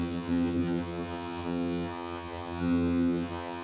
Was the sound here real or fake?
fake